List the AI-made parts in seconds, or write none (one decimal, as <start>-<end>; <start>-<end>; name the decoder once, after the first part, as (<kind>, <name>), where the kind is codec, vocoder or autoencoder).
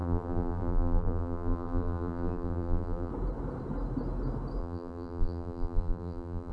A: 0.0-3.1 (vocoder, BigVGAN v2); 4.6-6.5